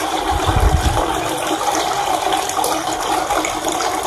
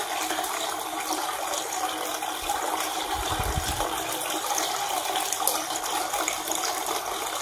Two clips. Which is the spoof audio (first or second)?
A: first